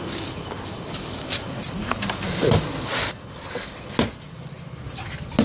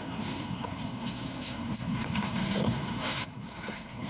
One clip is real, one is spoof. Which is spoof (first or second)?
second